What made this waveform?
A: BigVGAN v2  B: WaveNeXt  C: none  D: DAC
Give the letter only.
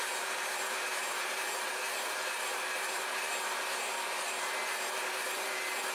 A